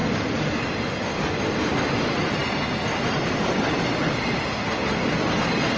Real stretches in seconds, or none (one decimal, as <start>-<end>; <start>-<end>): 0.0-1.0; 2.4-3.3